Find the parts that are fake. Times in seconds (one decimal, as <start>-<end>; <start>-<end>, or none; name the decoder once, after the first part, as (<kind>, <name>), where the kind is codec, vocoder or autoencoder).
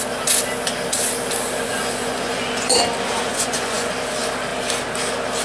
1.7-2.7 (vocoder, Vocos); 3.3-3.9